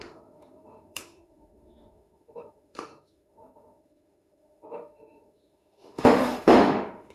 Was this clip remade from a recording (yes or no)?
yes